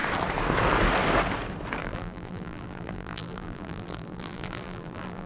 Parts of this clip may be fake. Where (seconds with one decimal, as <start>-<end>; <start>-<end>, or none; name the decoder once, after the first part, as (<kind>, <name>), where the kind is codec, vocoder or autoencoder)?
1.8-5.3 (vocoder, BigVGAN v2)